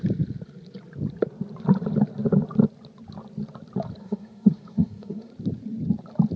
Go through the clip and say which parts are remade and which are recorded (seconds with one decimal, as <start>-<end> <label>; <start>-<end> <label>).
0.0-4.0 recorded; 4.0-5.3 remade; 5.3-6.4 recorded